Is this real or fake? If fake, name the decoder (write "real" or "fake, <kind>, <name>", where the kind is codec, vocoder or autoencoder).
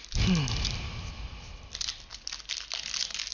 real